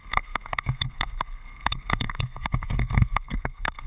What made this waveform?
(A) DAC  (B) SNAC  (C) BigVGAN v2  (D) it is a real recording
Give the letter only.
B